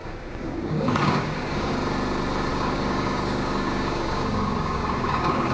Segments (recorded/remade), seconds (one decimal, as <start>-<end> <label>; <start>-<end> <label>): 0.0-1.7 remade; 1.7-2.5 recorded; 2.5-5.5 remade